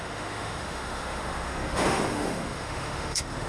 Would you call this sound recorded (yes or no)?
no